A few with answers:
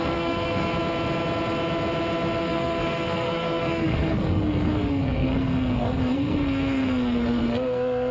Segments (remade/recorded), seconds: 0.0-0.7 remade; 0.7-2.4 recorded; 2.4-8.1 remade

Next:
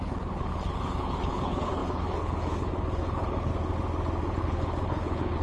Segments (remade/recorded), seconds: 0.0-3.5 remade; 3.5-4.4 recorded; 4.4-5.4 remade

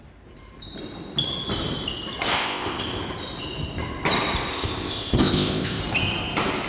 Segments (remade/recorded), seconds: 0.0-2.3 recorded; 2.3-3.0 remade; 3.0-4.5 recorded; 4.5-5.8 remade; 5.8-6.7 recorded

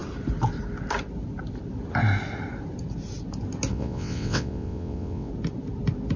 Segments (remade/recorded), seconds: 0.0-3.7 recorded; 3.7-5.3 remade; 5.3-6.2 recorded

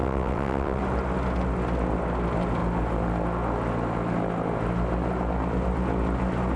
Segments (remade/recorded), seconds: 0.0-0.8 remade; 0.8-6.6 recorded

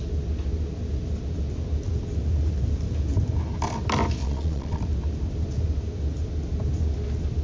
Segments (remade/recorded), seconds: 0.0-4.2 recorded; 4.2-4.8 remade; 4.8-7.4 recorded

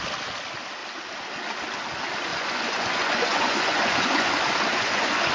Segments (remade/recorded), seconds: 0.0-2.3 recorded; 2.3-4.3 remade; 4.3-4.7 recorded; 4.7-5.3 remade